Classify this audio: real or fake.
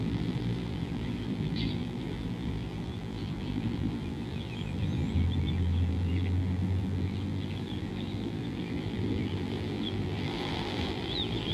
fake